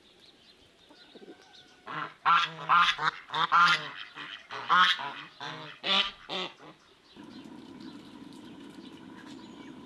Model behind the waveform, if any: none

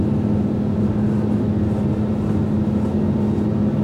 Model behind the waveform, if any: none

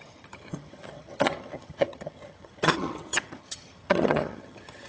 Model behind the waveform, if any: vocoder, HiFi-GAN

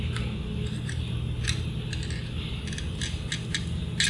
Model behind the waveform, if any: none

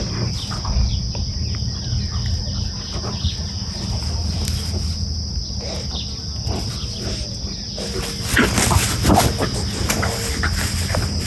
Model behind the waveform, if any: none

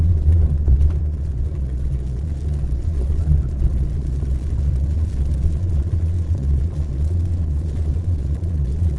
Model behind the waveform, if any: vocoder, Vocos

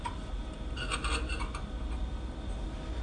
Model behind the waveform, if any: none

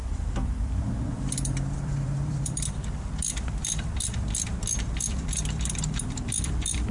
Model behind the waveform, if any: vocoder, BigVGAN v2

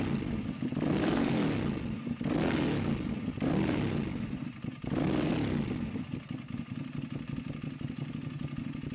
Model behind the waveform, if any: none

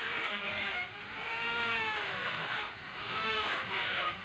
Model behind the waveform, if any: autoencoder, DAC-VAE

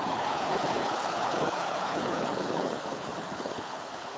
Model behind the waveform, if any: codec, HILCodec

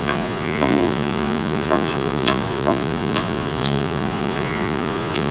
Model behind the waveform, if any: vocoder, Vocos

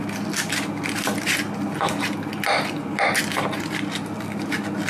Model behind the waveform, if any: none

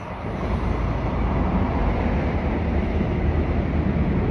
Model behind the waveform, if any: none